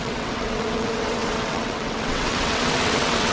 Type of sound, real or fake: fake